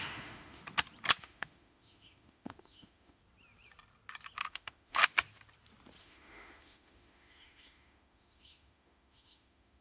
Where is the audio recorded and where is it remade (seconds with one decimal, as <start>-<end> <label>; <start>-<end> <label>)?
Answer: 0.0-0.6 remade; 0.6-1.2 recorded; 1.2-3.2 remade; 3.2-4.5 recorded; 4.5-5.0 remade; 5.0-6.0 recorded; 6.0-9.8 remade